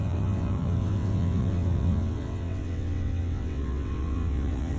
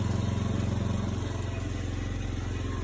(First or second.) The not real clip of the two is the first